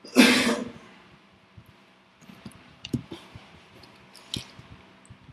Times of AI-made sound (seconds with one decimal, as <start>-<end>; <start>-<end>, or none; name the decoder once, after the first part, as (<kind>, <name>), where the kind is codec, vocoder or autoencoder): 0.6-3.8 (vocoder, BigVGAN v2)